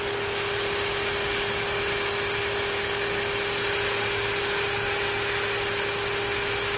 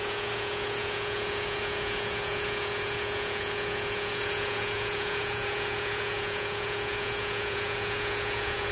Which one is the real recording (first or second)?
first